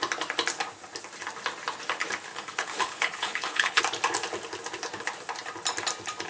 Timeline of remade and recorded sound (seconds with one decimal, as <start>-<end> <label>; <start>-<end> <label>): 0.0-2.3 recorded; 2.3-3.8 remade; 3.8-6.3 recorded

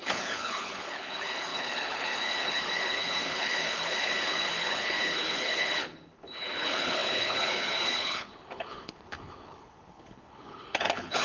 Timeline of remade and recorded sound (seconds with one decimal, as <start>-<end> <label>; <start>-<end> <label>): 0.0-11.2 remade

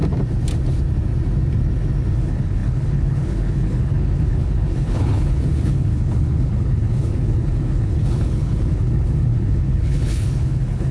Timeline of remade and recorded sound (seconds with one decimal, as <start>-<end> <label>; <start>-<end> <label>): 0.0-2.1 recorded; 2.1-10.9 remade

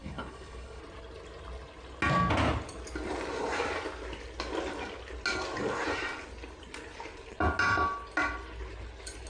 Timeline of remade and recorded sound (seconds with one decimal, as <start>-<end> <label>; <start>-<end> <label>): 0.0-0.8 remade; 0.8-9.3 recorded